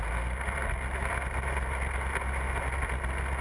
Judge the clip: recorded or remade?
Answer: recorded